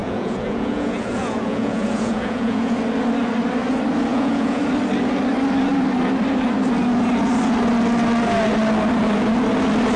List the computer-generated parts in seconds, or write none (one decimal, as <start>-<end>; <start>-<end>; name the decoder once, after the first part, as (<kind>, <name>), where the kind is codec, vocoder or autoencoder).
0.0-2.8 (vocoder, Vocos); 4.1-4.6

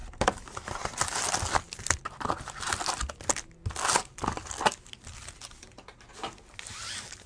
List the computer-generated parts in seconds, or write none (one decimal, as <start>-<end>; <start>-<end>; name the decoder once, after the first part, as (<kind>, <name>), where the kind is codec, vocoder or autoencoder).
none

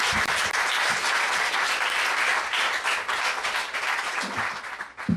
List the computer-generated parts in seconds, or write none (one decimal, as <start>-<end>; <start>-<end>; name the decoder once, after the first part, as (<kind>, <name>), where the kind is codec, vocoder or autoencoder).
none

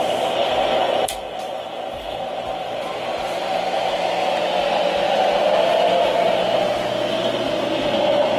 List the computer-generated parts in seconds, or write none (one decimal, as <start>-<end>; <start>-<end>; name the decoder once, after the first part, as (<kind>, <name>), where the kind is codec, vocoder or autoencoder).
0.4-3.9 (vocoder, BigVGAN v2); 5.7-6.4

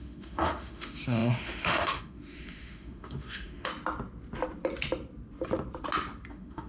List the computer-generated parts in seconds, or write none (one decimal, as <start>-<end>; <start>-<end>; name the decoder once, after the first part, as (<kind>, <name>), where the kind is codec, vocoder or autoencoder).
0.0-3.7 (autoencoder, DAC-VAE); 6.3-6.7

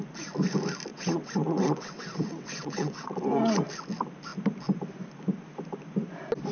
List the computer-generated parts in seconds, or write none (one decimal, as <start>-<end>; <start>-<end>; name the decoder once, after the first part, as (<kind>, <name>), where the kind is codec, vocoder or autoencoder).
0.9-3.6 (vocoder, WaveNeXt)